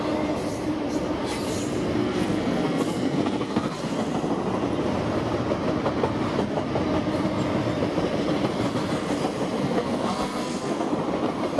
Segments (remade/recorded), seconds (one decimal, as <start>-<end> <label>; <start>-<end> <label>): 0.0-2.0 recorded; 2.0-3.8 remade; 3.8-9.6 recorded; 9.6-10.9 remade; 10.9-11.6 recorded